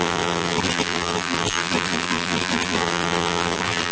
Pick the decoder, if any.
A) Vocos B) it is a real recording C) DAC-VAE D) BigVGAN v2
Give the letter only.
D